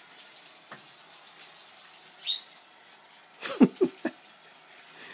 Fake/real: real